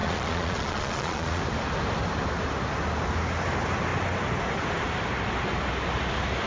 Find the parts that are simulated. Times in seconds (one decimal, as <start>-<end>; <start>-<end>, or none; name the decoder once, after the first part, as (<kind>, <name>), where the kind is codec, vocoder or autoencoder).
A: 0.0-1.4 (vocoder, Vocos)

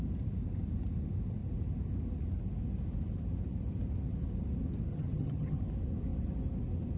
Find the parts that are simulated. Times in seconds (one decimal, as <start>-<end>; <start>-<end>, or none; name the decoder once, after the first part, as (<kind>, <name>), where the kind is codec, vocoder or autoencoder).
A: 4.9-5.6 (vocoder, HiFi-GAN)